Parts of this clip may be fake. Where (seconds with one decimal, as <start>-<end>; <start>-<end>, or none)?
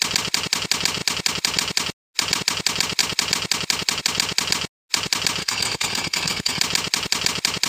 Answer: 5.4-6.6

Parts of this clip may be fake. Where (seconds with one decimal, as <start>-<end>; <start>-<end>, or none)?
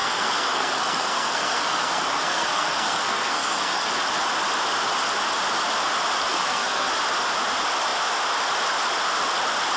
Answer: 0.0-3.9; 6.3-6.9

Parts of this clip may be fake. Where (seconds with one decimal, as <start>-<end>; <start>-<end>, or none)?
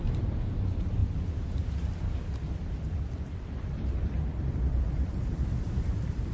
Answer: none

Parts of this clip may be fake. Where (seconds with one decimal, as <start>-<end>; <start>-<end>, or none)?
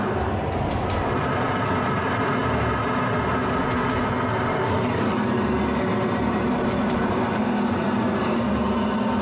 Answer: none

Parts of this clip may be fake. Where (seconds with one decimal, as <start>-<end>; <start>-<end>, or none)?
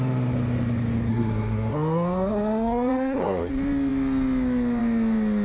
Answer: 1.1-3.5